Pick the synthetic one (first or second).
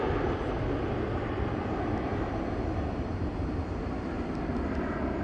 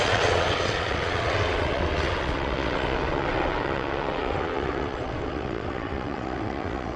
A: second